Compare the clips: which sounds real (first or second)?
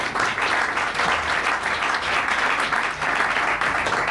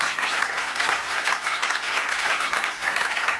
first